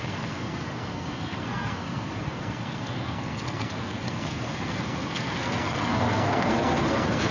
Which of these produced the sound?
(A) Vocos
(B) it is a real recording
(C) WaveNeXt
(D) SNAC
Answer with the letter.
D